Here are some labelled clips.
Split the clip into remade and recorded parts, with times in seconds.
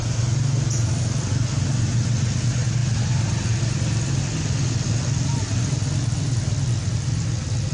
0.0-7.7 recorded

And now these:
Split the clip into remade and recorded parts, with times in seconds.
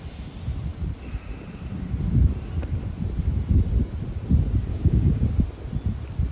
0.0-4.7 recorded; 4.7-5.4 remade; 5.4-6.3 recorded